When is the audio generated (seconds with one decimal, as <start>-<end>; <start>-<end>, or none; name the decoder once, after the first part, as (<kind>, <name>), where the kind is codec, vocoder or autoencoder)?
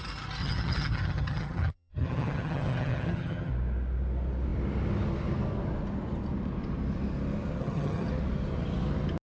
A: 0.4-3.5 (vocoder, HiFi-GAN); 7.6-8.1